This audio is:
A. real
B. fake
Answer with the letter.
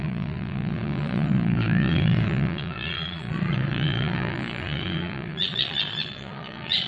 B